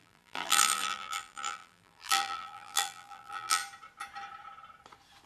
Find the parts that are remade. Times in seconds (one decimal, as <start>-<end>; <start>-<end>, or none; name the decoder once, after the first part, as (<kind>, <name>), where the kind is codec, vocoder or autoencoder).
0.0-3.6 (vocoder, BigVGAN v2)